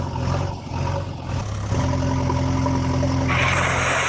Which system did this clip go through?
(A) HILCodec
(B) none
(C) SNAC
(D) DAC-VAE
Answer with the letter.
B